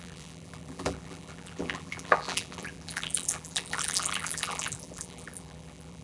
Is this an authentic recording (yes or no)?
no